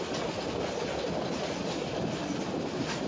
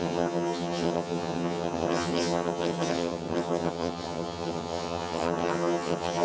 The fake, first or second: second